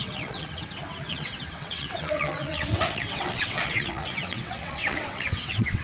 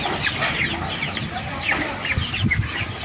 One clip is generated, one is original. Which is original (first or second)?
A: second